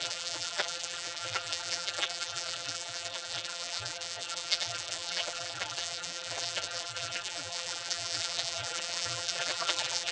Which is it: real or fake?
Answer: fake